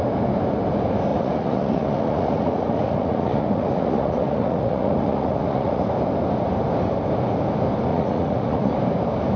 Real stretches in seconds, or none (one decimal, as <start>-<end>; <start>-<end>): 0.0-1.1; 5.8-7.9; 8.7-9.4